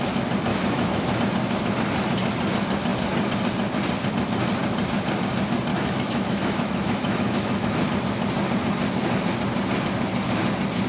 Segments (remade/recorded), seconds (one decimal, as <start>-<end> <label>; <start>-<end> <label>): 0.0-0.5 recorded; 0.5-1.2 remade; 1.2-5.7 recorded; 5.7-7.9 remade; 7.9-10.9 recorded